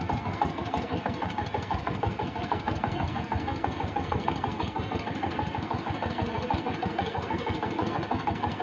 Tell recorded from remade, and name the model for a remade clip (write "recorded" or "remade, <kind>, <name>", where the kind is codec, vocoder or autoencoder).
remade, codec, SNAC